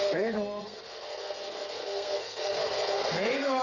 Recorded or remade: remade